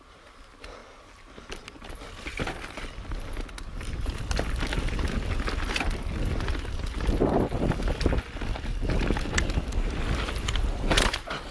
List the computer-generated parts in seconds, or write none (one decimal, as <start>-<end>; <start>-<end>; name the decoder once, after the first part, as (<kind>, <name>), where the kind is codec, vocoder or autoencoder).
none